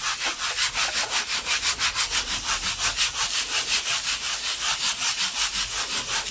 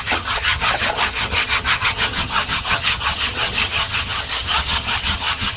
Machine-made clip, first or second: second